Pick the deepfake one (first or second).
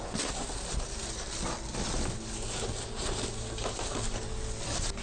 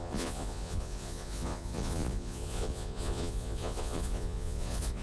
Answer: second